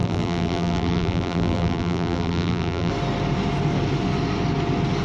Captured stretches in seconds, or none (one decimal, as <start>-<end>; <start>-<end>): 2.9-5.0